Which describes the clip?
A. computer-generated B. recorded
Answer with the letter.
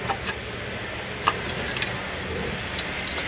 B